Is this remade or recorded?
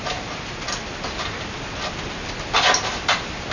recorded